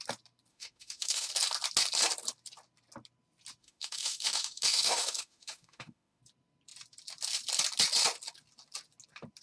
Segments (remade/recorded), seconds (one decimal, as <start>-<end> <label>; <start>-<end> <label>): 0.0-0.5 recorded; 0.5-1.3 remade; 1.3-3.6 recorded; 3.6-6.2 remade; 6.2-9.4 recorded